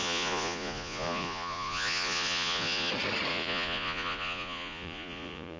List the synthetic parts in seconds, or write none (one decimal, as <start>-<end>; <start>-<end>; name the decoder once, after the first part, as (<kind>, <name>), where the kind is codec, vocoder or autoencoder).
0.0-2.9 (vocoder, Vocos); 3.3-5.6